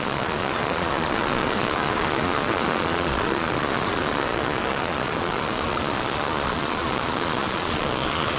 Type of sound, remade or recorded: remade